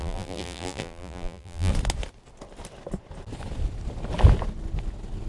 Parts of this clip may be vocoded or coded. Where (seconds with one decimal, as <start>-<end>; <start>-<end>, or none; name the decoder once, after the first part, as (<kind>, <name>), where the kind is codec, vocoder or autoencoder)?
0.0-1.7 (vocoder, BigVGAN v2)